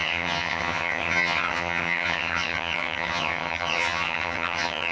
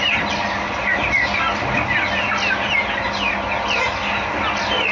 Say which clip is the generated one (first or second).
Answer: first